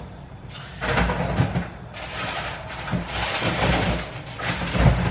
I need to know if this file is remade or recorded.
recorded